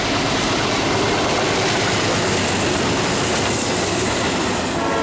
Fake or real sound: real